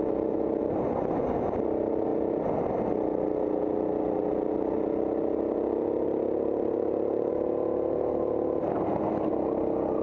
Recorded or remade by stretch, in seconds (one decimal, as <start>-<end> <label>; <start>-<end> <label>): 0.0-10.0 recorded